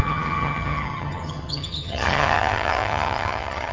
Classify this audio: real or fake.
fake